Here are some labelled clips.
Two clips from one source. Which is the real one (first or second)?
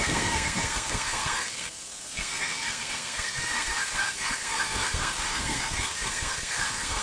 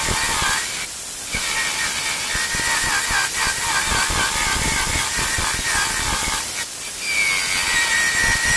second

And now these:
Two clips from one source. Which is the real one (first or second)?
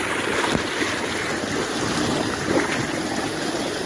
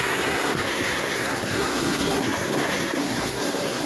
first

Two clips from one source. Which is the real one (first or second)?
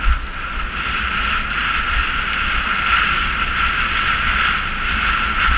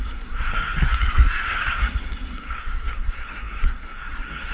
first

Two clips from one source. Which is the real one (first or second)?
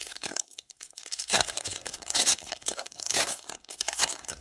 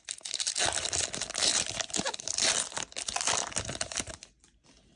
second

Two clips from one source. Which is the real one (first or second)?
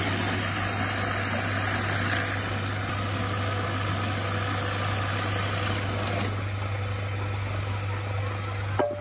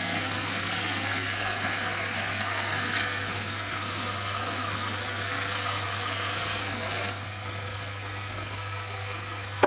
first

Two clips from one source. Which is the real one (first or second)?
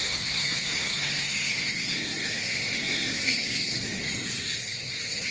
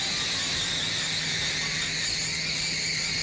second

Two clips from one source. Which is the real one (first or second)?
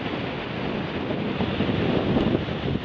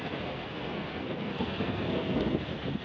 first